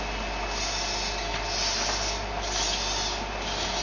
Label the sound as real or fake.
real